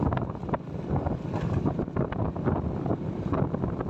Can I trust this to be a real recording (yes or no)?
yes